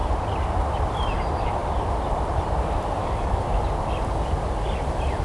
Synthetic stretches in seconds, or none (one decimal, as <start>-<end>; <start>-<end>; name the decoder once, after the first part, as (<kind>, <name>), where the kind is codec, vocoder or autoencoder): 3.0-3.5 (codec, DAC)